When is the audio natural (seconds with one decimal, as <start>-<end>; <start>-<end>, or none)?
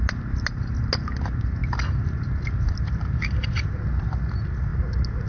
0.0-5.3